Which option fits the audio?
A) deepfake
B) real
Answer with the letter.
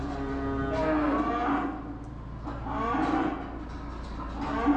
B